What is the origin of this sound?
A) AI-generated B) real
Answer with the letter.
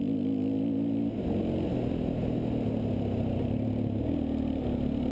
B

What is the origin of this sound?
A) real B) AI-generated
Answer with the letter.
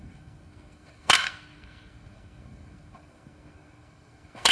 B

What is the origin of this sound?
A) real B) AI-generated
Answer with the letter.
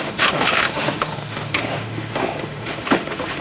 B